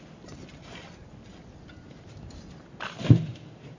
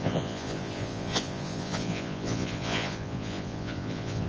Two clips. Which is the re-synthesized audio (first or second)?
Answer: second